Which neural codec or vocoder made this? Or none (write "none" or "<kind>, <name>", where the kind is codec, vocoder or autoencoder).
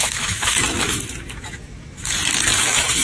autoencoder, DAC-VAE